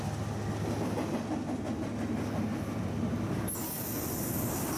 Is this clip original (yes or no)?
yes